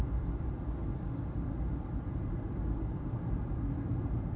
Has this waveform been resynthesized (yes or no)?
yes